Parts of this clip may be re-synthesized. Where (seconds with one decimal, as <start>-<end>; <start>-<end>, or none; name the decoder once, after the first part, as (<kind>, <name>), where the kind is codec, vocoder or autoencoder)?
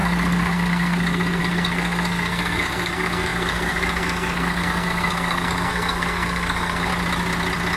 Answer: 0.0-6.9 (codec, SNAC)